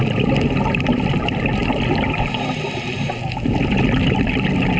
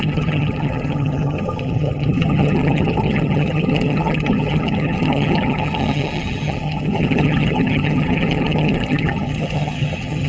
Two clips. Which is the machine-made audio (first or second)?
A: second